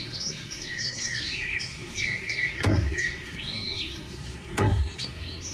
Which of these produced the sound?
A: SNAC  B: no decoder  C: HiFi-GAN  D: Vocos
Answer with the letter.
A